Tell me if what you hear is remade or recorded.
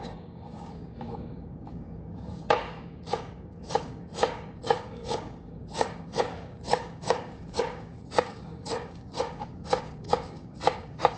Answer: remade